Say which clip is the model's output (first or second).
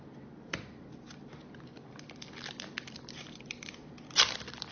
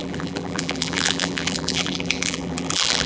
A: second